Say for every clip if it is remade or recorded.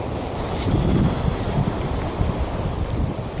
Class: remade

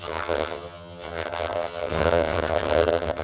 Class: remade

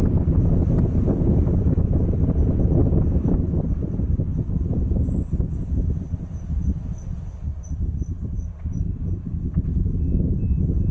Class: recorded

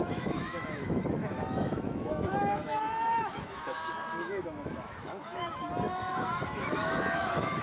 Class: remade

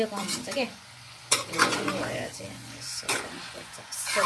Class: remade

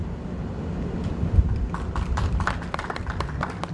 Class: recorded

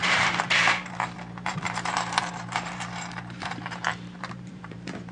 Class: remade